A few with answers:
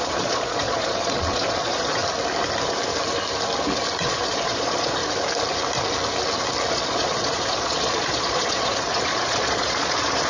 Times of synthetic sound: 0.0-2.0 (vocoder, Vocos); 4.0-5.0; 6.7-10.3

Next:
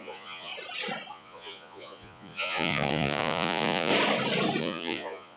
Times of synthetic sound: 0.0-0.5 (vocoder, Vocos); 1.1-3.9; 4.6-5.4